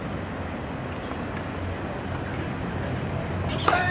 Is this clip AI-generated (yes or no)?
no